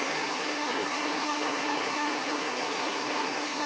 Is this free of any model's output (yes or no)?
no